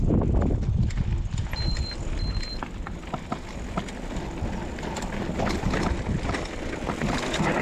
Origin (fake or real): real